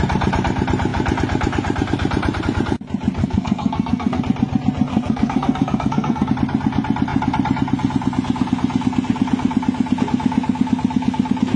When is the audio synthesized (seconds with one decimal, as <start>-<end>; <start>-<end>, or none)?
3.2-4.2; 4.9-6.3